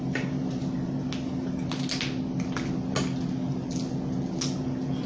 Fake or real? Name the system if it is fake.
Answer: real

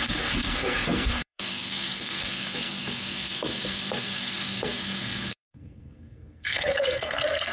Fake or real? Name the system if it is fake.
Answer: fake, codec, SNAC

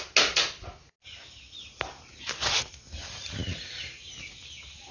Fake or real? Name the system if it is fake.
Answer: real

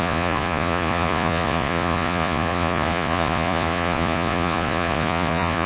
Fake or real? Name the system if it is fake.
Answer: fake, vocoder, Vocos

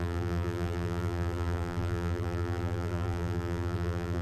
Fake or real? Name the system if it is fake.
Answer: fake, vocoder, BigVGAN v2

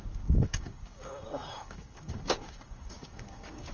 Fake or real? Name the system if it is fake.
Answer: fake, codec, DAC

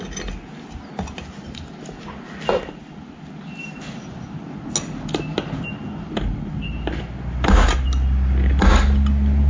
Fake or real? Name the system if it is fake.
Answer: real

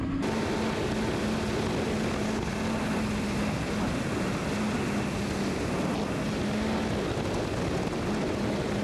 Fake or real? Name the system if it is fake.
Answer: real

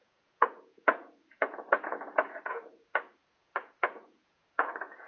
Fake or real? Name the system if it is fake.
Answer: fake, vocoder, Vocos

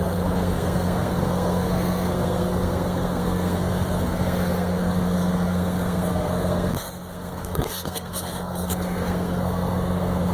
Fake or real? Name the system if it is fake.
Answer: fake, codec, SNAC